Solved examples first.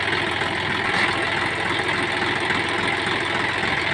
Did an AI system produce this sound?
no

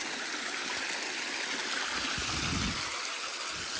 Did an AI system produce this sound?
no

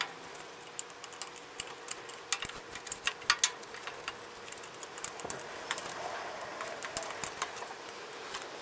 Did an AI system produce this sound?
no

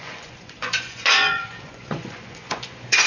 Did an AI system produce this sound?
yes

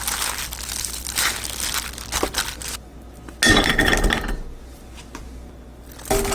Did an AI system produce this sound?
no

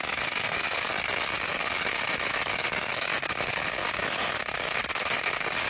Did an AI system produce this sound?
no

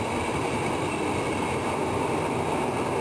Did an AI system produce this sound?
no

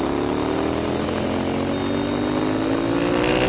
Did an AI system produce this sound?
no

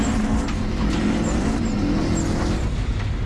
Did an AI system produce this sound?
no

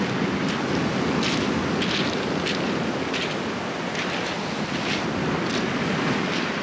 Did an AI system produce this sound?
no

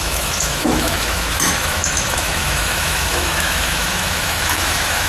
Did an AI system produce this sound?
yes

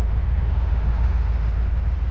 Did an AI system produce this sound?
yes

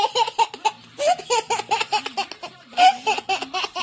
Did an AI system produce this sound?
no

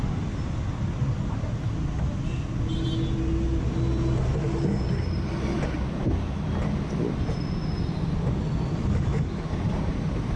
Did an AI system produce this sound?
no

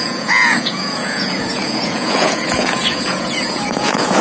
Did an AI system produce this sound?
yes